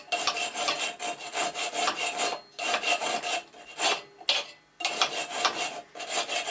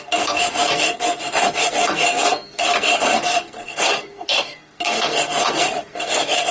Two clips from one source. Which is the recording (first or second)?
first